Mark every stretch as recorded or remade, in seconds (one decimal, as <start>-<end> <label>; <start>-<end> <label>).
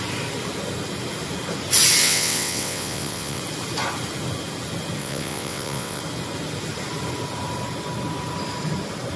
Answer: 0.0-2.0 recorded; 2.0-3.4 remade; 3.4-5.0 recorded; 5.0-6.0 remade; 6.0-9.2 recorded